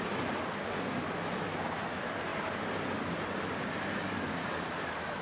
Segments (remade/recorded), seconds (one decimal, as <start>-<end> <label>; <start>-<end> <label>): 0.0-5.2 recorded